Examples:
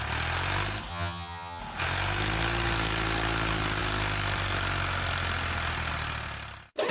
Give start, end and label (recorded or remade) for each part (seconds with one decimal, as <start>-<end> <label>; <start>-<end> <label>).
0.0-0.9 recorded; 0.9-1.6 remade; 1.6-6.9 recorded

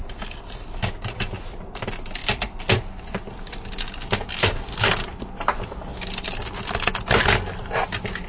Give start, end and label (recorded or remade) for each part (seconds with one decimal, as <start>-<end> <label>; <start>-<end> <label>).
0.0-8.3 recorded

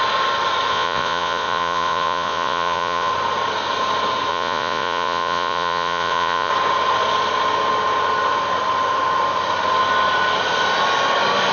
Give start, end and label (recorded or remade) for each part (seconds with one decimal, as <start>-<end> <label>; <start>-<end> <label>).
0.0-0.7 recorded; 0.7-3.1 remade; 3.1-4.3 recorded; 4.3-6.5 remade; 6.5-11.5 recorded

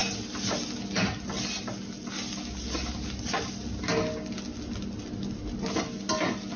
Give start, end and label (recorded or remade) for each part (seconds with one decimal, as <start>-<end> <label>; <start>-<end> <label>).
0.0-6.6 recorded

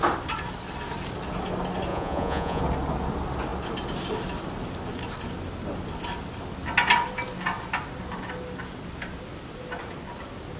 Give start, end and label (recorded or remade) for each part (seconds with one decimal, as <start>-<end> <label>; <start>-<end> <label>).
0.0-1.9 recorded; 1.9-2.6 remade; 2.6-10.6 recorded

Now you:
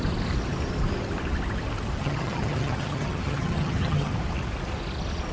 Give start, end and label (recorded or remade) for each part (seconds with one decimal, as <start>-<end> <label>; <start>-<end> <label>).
0.0-2.0 recorded; 2.0-4.1 remade; 4.1-5.3 recorded

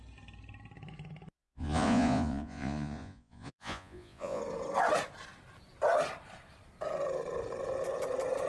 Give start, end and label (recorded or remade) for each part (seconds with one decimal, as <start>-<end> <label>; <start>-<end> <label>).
0.0-1.4 recorded; 1.4-4.4 remade; 4.4-8.5 recorded